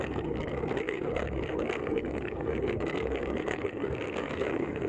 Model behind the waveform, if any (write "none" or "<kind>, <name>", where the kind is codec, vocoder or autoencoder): codec, SNAC